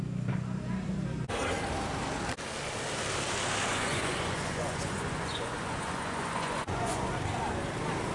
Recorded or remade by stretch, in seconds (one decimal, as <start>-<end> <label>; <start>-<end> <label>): 0.0-3.7 recorded; 3.7-7.1 remade; 7.1-8.1 recorded